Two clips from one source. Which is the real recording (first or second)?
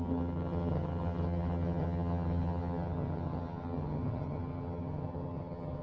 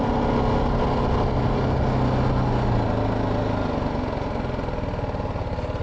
second